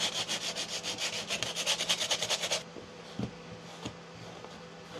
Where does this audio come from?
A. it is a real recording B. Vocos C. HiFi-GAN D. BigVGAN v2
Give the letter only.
A